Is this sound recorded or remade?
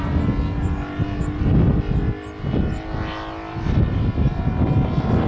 recorded